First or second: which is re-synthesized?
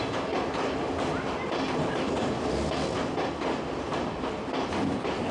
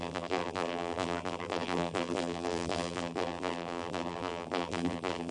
second